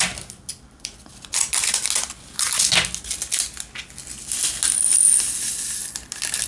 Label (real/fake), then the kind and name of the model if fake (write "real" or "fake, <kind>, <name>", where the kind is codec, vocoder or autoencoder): real